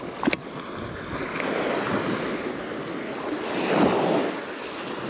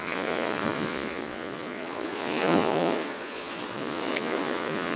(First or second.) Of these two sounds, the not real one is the second